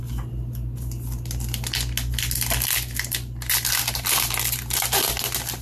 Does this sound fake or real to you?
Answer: real